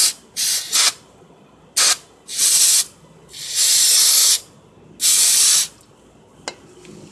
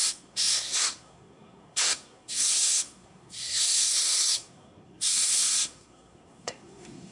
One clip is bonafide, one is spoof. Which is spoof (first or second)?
second